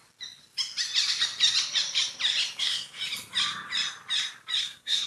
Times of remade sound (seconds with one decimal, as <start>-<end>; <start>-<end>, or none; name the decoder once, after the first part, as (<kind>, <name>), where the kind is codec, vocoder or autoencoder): 2.6-3.0 (codec, SNAC); 4.6-5.1